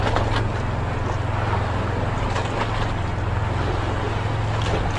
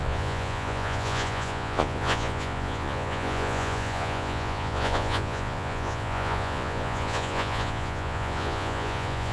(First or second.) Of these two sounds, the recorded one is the first